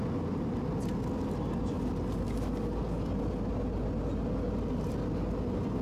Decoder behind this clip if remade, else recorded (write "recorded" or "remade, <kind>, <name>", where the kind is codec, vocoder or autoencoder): recorded